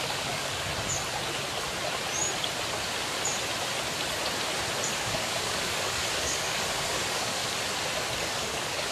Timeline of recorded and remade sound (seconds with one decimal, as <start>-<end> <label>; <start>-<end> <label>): 0.0-0.7 remade; 0.7-5.0 recorded; 5.0-7.4 remade; 7.4-8.1 recorded; 8.1-8.9 remade

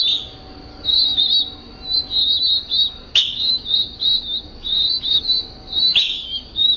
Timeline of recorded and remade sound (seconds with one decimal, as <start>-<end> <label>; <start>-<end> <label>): 0.0-0.7 recorded; 0.7-1.2 remade; 1.2-2.6 recorded; 2.6-6.8 remade

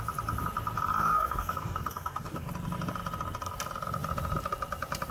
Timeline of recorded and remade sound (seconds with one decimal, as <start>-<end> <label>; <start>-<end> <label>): 0.0-1.0 recorded; 1.0-2.5 remade; 2.5-5.1 recorded